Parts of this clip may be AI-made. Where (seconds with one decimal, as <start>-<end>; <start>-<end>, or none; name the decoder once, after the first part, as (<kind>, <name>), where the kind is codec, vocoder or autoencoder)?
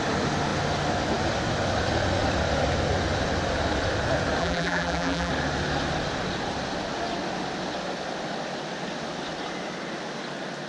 4.4-5.3 (vocoder, BigVGAN v2)